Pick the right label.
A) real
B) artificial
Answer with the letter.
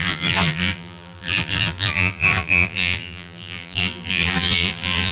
B